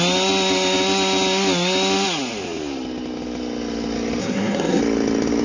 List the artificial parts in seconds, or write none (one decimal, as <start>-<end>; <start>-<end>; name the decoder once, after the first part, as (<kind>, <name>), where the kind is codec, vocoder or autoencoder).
4.2-4.8 (codec, SNAC)